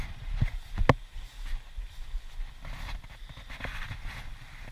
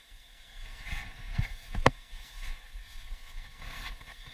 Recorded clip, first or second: first